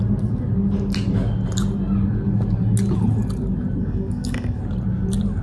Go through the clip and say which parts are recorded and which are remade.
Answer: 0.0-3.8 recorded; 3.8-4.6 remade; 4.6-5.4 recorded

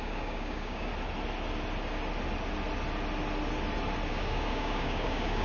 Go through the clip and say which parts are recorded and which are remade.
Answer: 0.0-0.9 remade; 0.9-4.1 recorded; 4.1-5.4 remade

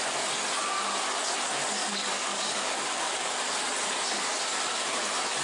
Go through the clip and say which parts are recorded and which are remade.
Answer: 0.0-1.8 recorded; 1.8-3.4 remade; 3.4-5.4 recorded

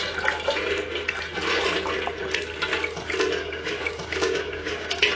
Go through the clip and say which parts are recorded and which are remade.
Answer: 0.0-3.4 recorded; 3.4-5.1 remade

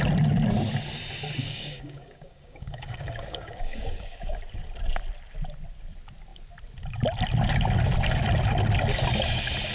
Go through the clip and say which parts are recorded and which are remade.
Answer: 0.0-1.4 recorded; 1.4-4.4 remade; 4.4-9.7 recorded

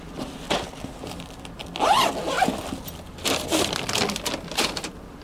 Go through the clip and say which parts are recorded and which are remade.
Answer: 0.0-5.2 recorded

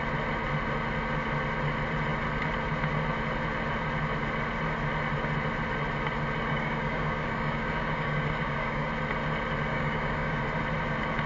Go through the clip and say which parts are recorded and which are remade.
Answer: 0.0-6.5 recorded; 6.5-8.9 remade; 8.9-9.7 recorded; 9.7-10.4 remade; 10.4-11.3 recorded